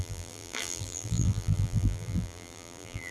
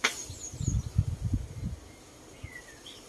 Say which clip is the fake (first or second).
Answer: first